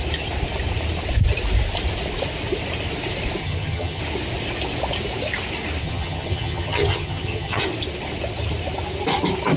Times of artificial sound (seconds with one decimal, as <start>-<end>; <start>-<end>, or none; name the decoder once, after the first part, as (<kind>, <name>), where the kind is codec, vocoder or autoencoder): 3.4-4.0 (vocoder, HiFi-GAN); 5.8-7.6